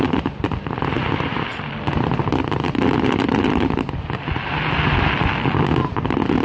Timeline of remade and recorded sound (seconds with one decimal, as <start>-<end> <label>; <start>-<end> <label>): 0.0-6.4 recorded